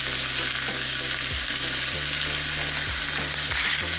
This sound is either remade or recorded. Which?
recorded